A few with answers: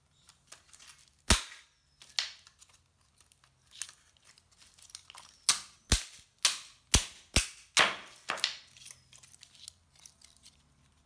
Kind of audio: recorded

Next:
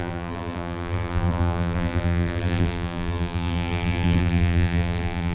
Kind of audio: remade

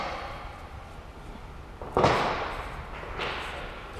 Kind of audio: recorded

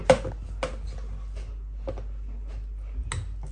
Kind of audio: recorded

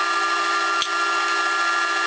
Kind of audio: recorded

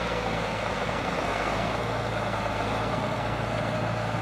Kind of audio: remade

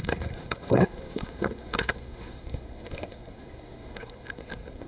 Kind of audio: remade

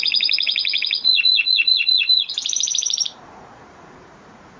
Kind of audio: remade